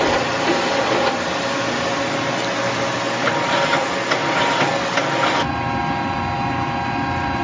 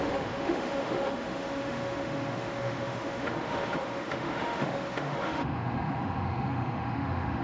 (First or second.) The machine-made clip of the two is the second